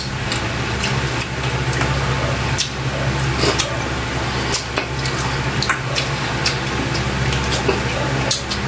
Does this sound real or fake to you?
real